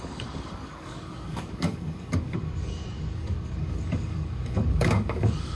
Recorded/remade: remade